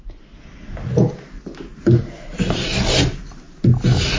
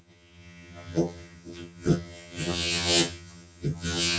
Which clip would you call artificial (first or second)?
second